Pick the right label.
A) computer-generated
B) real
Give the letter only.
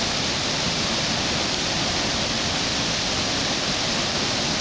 B